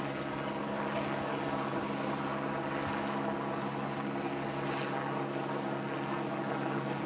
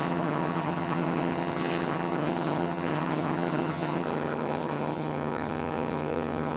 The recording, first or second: first